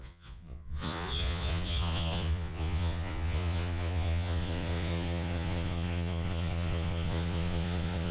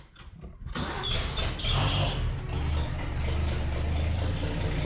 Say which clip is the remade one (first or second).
first